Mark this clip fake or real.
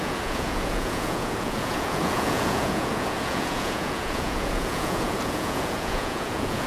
fake